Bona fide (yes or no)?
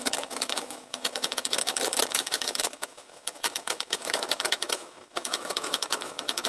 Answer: no